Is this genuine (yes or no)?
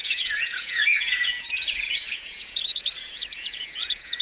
no